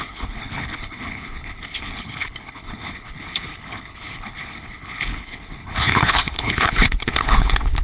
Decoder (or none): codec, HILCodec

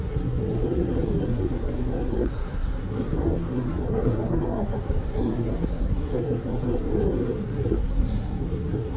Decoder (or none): codec, SNAC